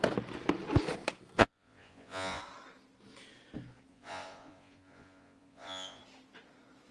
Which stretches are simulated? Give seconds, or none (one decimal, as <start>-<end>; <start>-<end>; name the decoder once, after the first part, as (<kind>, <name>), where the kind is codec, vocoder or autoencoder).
1.4-2.4 (vocoder, Vocos); 3.9-6.0